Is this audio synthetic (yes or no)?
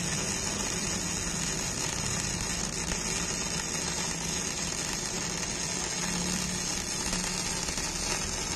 no